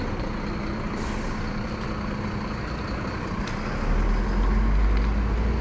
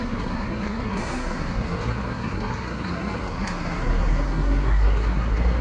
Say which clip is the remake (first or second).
second